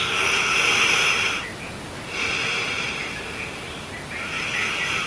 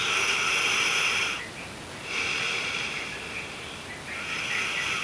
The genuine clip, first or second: first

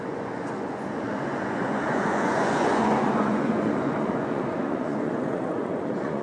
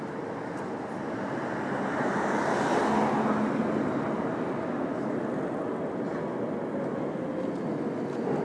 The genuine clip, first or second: second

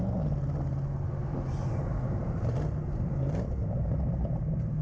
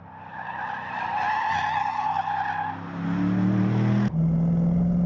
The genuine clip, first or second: second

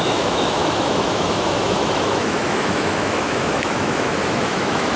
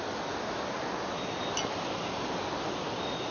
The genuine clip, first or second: second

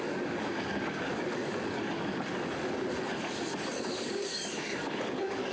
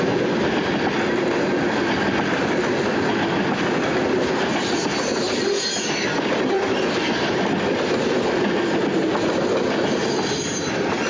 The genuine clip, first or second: second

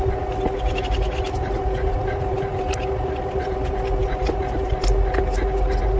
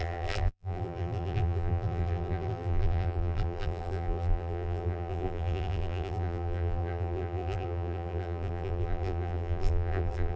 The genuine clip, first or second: first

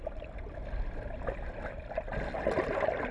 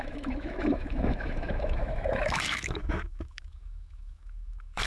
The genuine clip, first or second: first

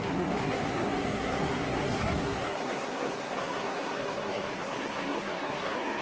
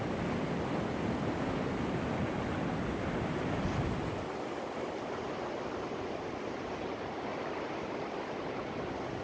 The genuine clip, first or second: second